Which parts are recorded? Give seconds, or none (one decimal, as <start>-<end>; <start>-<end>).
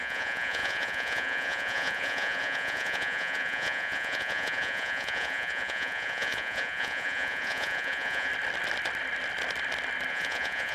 8.3-10.1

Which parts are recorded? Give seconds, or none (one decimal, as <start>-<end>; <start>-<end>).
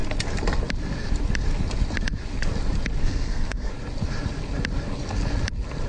0.0-3.0; 3.7-5.9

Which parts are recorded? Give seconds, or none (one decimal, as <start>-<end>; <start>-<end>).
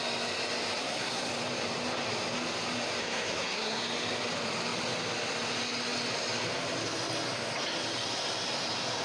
0.0-0.8; 1.3-3.0; 3.8-9.0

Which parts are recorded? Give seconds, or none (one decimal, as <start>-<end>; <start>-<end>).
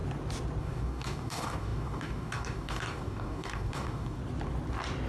0.0-0.6; 4.2-5.1